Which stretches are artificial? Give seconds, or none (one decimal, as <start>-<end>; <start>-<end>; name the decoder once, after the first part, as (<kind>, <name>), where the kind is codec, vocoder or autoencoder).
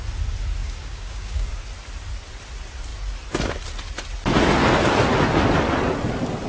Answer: 0.6-1.5 (codec, DAC)